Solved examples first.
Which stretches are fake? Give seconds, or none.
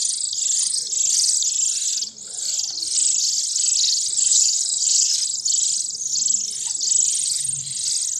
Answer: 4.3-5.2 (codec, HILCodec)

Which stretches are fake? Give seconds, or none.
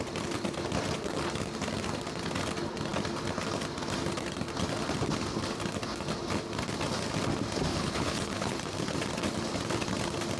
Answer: 7.7-8.6 (codec, HILCodec)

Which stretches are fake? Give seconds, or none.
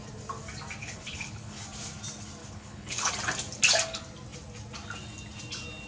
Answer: 0.8-1.6 (codec, HILCodec); 2.4-3.1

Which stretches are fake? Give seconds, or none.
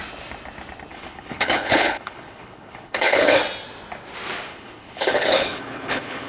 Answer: 0.9-3.4 (codec, HILCodec); 4.5-6.3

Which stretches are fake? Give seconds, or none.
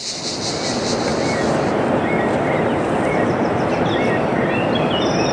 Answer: none